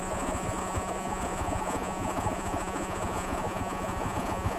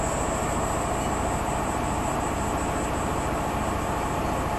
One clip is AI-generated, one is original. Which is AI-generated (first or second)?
first